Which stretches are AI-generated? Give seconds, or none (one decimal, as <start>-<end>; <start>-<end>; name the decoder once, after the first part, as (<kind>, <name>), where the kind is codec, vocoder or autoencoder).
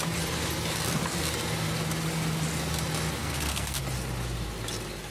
3.2-3.8 (codec, SNAC)